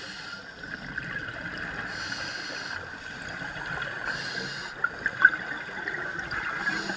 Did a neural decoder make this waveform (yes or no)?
no